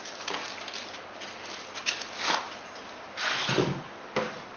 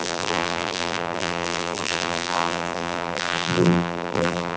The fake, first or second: second